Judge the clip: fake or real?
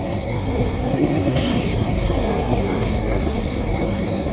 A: fake